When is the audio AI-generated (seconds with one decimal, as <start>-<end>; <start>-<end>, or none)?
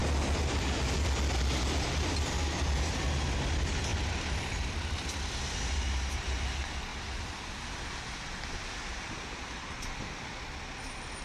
3.9-5.4; 6.9-10.0